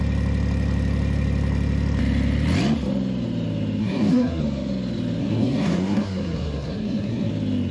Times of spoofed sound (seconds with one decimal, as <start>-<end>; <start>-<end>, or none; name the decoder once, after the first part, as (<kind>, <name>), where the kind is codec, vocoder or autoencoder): 3.8-4.4 (codec, SNAC); 5.2-7.3